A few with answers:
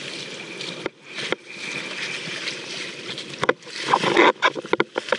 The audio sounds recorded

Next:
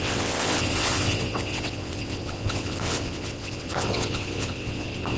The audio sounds remade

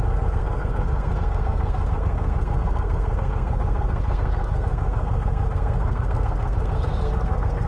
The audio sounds remade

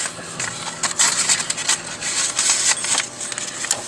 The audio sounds recorded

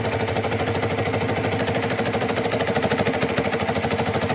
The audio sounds recorded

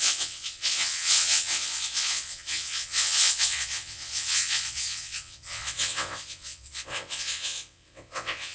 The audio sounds remade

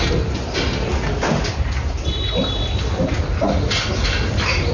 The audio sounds recorded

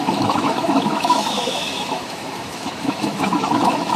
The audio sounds remade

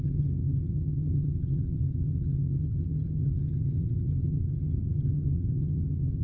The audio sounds remade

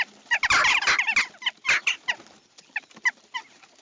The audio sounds recorded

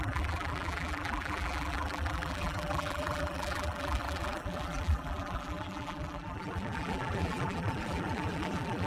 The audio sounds remade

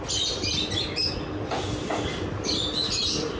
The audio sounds recorded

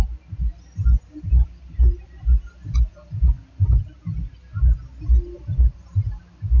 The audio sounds recorded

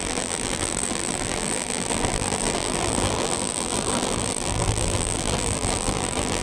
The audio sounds remade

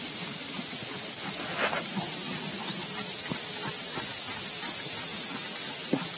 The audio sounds recorded